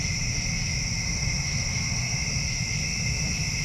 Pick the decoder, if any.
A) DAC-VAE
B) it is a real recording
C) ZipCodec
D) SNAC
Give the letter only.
B